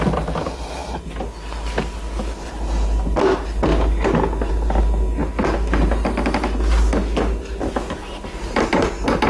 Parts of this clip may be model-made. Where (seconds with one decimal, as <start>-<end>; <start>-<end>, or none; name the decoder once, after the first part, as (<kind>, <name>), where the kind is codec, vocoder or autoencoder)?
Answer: none